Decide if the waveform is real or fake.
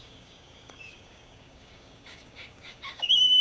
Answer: fake